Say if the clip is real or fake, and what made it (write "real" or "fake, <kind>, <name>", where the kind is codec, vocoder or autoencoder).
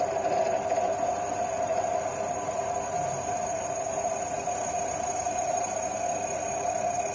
real